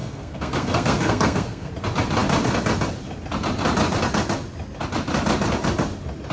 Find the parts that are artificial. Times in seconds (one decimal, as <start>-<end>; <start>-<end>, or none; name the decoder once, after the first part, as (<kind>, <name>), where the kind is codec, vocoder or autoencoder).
0.0-1.7 (codec, SNAC)